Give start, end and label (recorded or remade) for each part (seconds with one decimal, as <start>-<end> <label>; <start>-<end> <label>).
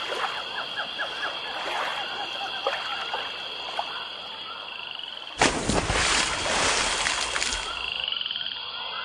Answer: 0.0-9.0 recorded